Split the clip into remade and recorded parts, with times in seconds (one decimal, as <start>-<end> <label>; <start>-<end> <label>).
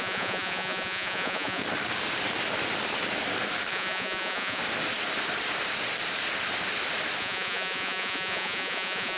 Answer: 0.0-1.6 remade; 1.6-3.7 recorded; 3.7-4.6 remade; 4.6-7.2 recorded; 7.2-9.2 remade